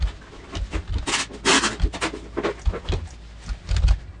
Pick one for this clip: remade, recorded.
recorded